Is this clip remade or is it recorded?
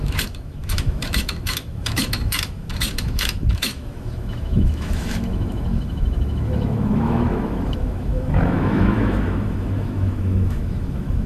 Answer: remade